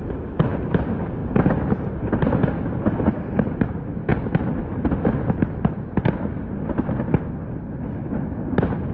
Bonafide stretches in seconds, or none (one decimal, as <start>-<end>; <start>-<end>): 0.0-4.1; 6.0-8.9